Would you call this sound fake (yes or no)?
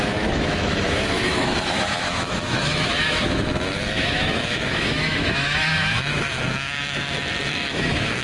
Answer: yes